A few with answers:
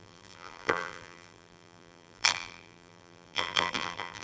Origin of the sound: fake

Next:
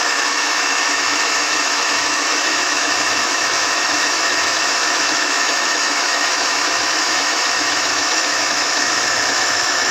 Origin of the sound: fake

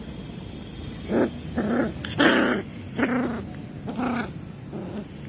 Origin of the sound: real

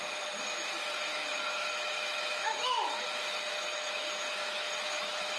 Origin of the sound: fake